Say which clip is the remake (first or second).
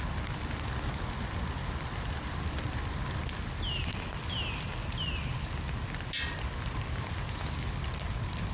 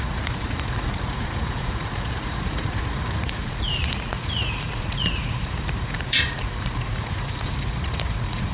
second